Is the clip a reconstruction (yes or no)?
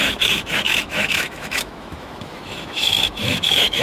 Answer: yes